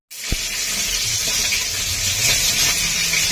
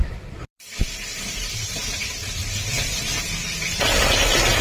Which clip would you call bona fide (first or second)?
first